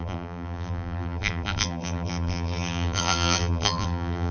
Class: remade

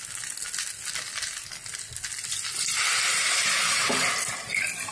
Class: recorded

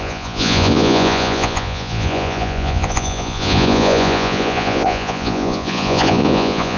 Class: remade